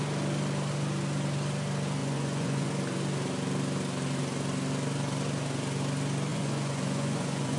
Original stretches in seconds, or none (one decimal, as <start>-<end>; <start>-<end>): 0.0-2.0; 2.7-6.3